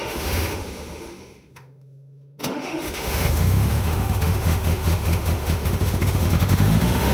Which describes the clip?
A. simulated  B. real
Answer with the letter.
A